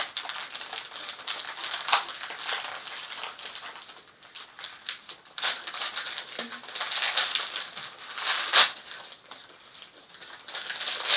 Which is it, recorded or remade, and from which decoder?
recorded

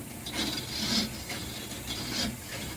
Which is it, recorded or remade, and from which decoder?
recorded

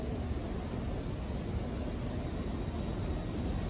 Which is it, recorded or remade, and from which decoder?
recorded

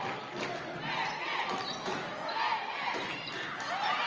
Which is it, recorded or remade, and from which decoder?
recorded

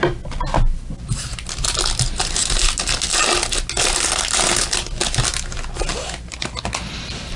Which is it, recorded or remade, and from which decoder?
recorded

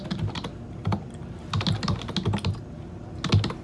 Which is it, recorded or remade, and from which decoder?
recorded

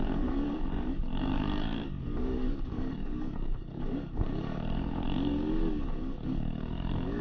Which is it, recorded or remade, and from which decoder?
remade, codec, DAC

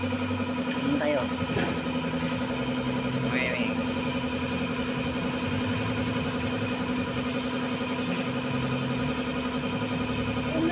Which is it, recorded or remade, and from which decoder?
recorded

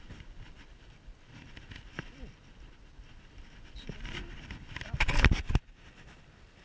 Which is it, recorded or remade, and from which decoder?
recorded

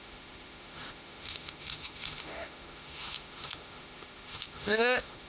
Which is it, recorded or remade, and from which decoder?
remade, autoencoder, DAC-VAE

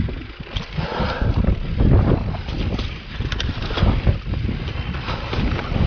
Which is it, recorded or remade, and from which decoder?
recorded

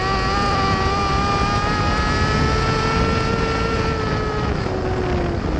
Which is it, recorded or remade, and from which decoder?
recorded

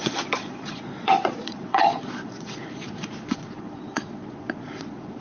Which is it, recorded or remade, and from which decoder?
remade, vocoder, Vocos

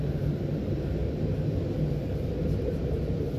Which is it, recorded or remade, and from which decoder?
recorded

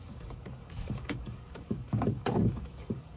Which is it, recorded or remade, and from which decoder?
remade, codec, DAC